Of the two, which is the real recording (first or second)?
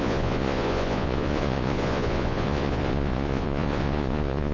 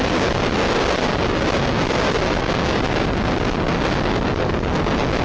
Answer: second